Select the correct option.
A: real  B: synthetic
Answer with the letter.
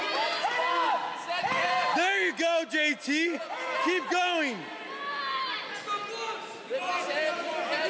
A